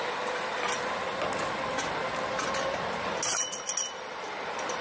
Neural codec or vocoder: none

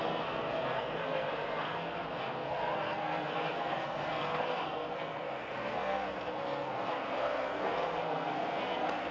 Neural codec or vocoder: codec, SNAC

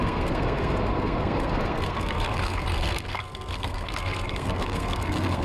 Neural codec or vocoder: codec, SNAC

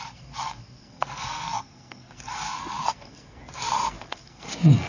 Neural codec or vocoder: codec, SNAC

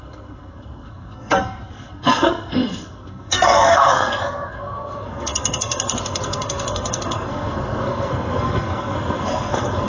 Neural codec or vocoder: codec, SNAC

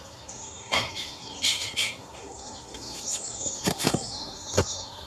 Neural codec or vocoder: codec, SNAC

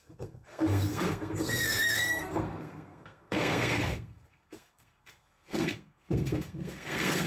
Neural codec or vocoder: codec, SNAC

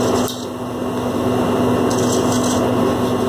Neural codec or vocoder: none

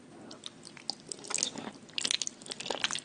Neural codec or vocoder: none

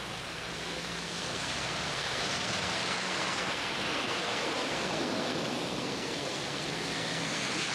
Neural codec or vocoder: codec, SNAC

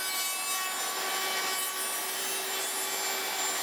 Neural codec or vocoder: none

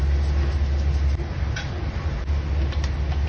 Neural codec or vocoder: none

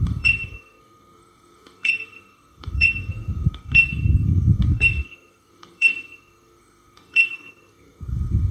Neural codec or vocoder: codec, SNAC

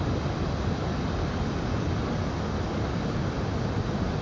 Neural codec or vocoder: none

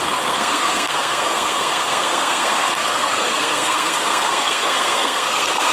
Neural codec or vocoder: codec, SNAC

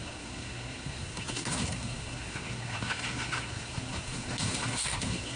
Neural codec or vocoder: codec, SNAC